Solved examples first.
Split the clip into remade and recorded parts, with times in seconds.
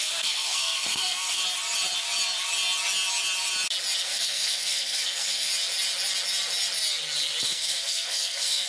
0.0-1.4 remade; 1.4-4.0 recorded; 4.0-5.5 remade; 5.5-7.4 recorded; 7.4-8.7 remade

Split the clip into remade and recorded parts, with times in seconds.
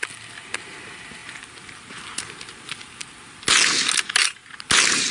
0.0-5.1 recorded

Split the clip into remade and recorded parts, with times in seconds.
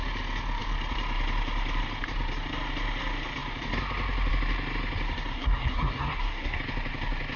0.0-5.3 recorded; 5.3-6.6 remade; 6.6-7.4 recorded